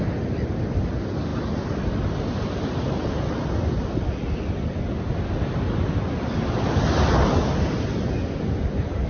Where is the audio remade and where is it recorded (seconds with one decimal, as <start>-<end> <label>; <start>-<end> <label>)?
0.0-9.1 recorded